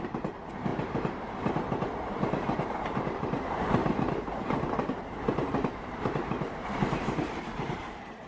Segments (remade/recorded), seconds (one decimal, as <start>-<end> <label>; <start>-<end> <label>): 0.0-3.8 remade; 3.8-4.9 recorded; 4.9-8.3 remade